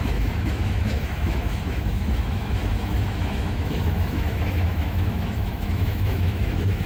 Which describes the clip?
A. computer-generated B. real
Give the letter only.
A